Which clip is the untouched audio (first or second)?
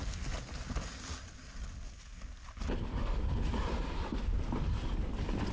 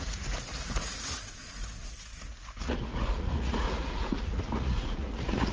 first